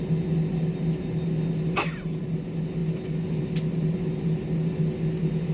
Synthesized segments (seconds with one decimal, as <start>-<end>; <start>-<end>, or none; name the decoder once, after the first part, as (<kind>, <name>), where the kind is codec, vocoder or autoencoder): none